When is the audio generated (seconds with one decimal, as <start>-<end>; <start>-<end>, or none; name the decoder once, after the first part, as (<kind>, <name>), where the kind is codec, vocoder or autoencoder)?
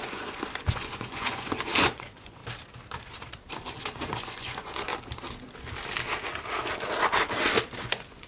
0.0-2.4 (vocoder, Vocos); 3.5-4.9; 7.8-8.3